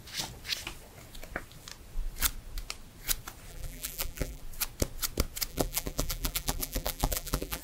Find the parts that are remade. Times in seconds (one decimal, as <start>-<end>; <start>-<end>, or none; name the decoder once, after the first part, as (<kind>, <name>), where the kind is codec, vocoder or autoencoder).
3.5-4.4 (vocoder, BigVGAN v2); 5.5-7.6